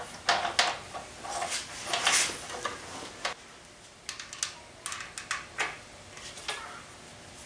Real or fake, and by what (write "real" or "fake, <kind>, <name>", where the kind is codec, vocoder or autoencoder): real